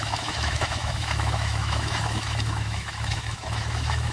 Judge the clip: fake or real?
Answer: fake